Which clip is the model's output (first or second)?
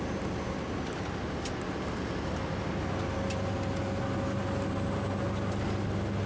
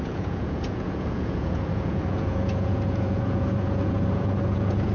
second